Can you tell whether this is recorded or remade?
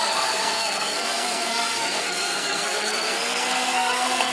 remade